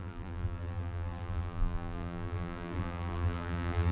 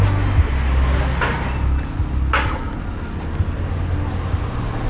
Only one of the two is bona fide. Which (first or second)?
second